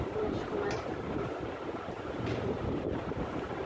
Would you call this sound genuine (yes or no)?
no